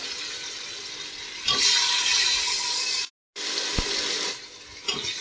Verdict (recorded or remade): recorded